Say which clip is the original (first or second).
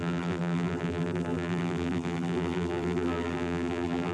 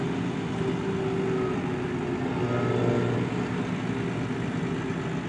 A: second